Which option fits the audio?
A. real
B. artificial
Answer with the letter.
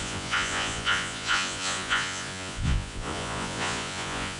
B